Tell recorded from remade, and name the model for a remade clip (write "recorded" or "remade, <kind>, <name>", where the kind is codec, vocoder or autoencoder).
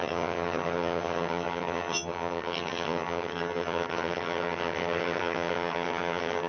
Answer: remade, vocoder, HiFi-GAN